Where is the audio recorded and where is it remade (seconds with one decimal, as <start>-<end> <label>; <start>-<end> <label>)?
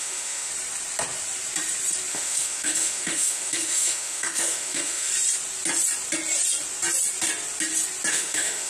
0.0-0.5 remade; 0.5-2.1 recorded; 2.1-5.1 remade; 5.1-8.1 recorded; 8.1-8.7 remade